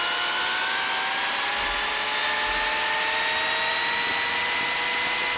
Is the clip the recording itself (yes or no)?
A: yes